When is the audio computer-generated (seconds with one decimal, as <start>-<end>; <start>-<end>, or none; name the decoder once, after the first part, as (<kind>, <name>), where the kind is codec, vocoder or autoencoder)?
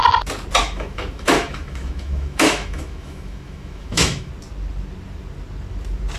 0.6-4.3 (autoencoder, DAC-VAE)